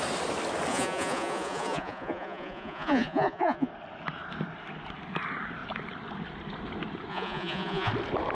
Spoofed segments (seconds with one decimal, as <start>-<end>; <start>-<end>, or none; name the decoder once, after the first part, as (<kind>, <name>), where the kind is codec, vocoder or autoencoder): 0.7-3.7 (vocoder, Vocos); 7.1-7.9